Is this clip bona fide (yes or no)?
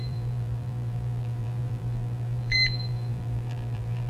no